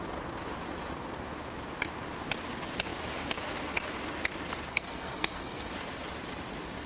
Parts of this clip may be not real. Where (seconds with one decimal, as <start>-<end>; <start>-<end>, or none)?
4.7-5.7